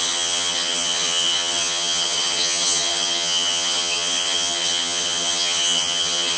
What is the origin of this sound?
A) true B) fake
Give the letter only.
B